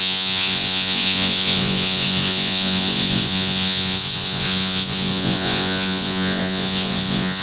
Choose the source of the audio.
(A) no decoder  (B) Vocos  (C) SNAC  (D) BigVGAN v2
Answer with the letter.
B